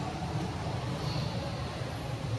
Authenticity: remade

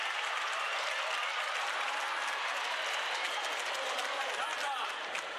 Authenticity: remade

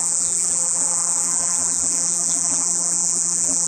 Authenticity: remade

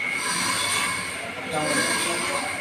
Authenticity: recorded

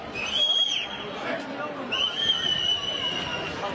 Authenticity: recorded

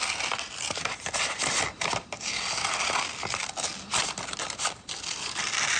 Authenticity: remade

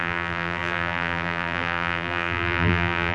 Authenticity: remade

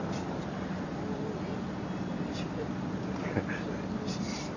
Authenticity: recorded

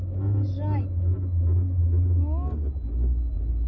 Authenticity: recorded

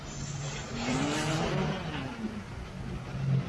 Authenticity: recorded